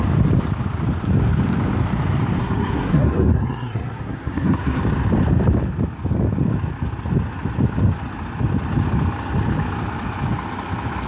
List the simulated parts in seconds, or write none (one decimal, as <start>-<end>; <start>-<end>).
2.4-4.8